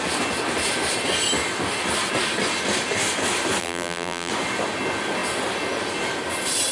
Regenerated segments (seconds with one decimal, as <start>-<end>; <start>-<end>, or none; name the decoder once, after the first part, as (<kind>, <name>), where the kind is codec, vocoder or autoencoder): 3.6-4.3 (vocoder, BigVGAN v2)